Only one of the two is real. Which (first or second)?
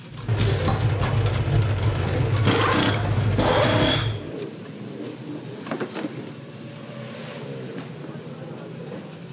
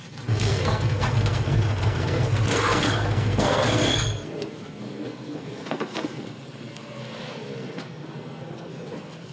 first